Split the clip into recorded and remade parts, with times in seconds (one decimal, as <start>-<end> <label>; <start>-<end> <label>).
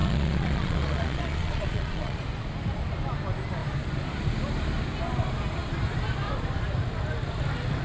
0.0-2.2 remade; 2.2-7.8 recorded